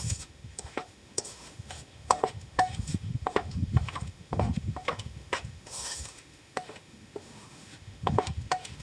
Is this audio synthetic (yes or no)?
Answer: yes